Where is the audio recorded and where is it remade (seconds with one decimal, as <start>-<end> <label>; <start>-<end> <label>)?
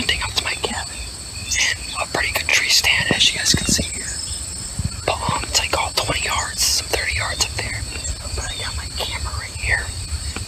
0.0-10.5 recorded